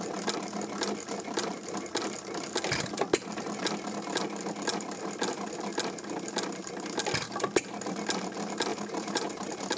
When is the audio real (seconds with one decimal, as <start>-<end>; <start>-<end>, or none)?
0.0-8.7